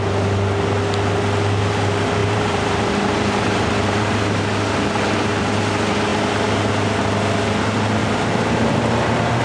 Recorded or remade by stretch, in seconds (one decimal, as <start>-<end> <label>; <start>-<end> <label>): 0.0-2.2 recorded; 2.2-4.4 remade; 4.4-8.0 recorded; 8.0-8.9 remade; 8.9-9.4 recorded